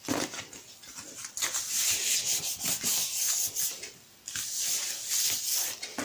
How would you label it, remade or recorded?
recorded